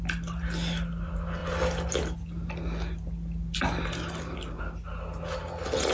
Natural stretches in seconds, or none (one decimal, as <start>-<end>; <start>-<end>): 0.0-5.9